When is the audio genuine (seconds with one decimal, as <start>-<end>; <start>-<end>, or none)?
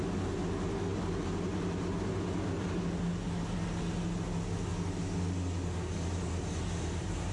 0.0-7.3